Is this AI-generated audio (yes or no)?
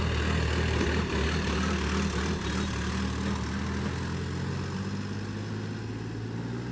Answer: no